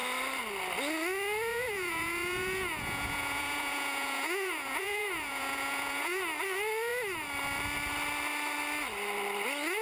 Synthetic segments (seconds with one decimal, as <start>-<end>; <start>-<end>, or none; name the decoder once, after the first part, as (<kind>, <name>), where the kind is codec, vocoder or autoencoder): 1.5-6.2 (vocoder, Vocos)